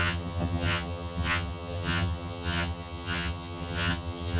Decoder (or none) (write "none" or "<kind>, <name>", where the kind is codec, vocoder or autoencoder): vocoder, HiFi-GAN